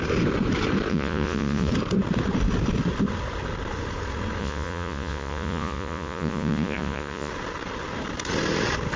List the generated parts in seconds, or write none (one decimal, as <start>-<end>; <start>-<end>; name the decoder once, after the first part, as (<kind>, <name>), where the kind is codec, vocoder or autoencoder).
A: 0.9-1.7 (vocoder, Vocos); 4.4-7.3